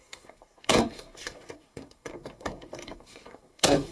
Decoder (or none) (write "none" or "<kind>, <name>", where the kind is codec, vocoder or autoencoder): codec, SNAC